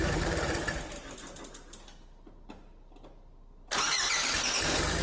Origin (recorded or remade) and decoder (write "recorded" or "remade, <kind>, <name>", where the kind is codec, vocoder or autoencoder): recorded